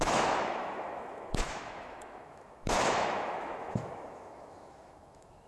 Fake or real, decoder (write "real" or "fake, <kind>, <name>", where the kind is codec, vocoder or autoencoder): fake, autoencoder, DAC-VAE